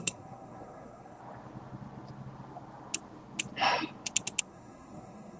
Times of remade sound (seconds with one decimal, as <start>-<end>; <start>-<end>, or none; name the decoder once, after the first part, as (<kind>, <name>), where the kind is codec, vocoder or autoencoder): 0.0-1.2 (codec, SNAC); 4.4-5.4